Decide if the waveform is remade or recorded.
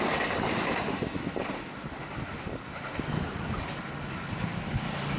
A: recorded